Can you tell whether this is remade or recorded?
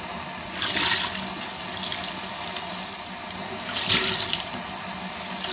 recorded